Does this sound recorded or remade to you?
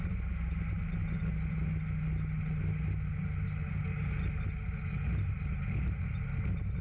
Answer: recorded